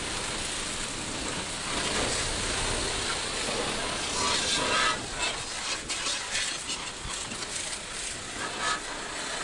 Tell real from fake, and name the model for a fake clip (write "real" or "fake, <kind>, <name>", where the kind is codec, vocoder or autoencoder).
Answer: real